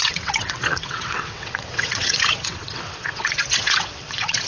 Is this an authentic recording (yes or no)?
no